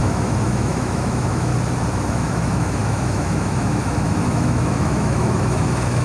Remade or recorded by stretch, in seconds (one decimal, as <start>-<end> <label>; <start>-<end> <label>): 0.0-1.5 remade; 1.5-2.1 recorded; 2.1-6.0 remade